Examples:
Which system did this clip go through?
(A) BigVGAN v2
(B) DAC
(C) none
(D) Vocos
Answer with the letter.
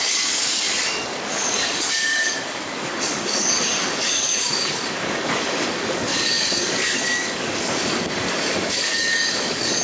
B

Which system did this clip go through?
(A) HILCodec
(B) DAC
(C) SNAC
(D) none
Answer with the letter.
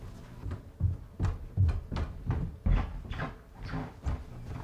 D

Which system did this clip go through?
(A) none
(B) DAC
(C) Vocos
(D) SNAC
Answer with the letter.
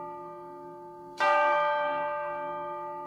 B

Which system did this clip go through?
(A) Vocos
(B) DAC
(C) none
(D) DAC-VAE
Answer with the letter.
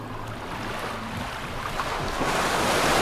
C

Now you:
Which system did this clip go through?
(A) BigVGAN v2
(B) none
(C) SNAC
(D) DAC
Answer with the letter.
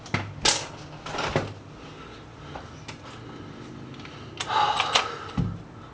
B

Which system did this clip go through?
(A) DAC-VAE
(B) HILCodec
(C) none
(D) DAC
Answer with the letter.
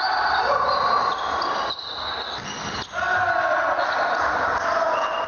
C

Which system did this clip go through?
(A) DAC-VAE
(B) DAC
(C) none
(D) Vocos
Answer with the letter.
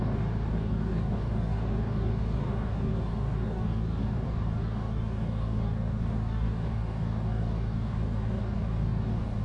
B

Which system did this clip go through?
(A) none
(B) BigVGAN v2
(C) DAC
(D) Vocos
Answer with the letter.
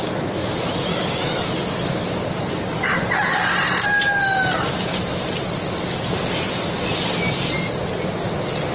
A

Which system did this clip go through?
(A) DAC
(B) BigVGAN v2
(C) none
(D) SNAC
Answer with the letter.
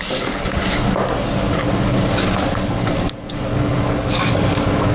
A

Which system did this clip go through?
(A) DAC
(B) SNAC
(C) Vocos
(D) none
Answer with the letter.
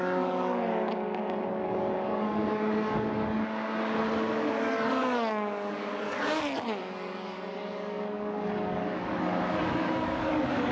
A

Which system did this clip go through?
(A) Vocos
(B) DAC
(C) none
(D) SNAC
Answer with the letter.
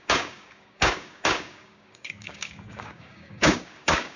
B